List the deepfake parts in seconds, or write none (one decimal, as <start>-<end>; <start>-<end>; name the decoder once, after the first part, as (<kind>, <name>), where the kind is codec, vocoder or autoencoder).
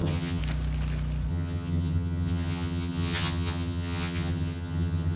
0.0-0.4 (vocoder, HiFi-GAN); 1.3-5.2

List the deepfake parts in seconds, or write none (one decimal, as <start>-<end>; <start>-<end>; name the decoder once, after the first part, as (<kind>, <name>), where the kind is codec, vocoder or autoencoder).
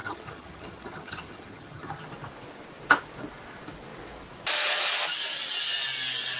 0.0-2.1 (vocoder, HiFi-GAN)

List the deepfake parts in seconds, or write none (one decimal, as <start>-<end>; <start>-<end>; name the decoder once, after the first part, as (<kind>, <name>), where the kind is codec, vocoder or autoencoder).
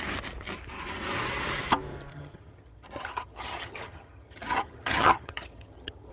2.1-6.1 (vocoder, HiFi-GAN)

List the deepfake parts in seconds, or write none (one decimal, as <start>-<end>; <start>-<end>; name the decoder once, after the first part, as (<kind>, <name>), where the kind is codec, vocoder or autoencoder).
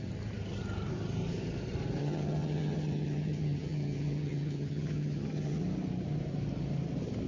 2.0-5.6 (vocoder, HiFi-GAN)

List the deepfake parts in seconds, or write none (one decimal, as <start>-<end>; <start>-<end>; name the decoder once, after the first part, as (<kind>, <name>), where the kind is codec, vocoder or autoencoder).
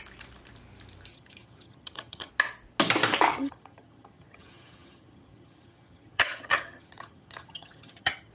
1.1-2.3 (vocoder, HiFi-GAN); 3.3-8.3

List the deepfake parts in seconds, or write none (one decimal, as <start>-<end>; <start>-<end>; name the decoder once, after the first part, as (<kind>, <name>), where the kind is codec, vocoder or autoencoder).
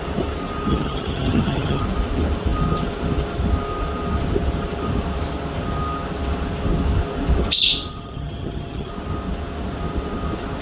0.7-1.8 (vocoder, HiFi-GAN); 7.9-8.9